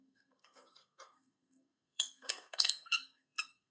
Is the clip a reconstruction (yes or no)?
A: yes